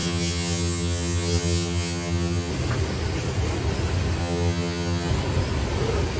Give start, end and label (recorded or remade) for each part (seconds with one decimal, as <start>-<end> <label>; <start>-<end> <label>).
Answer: 0.0-2.5 remade; 2.5-4.2 recorded; 4.2-5.1 remade; 5.1-6.2 recorded